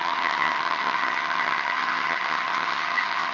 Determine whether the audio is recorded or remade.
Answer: remade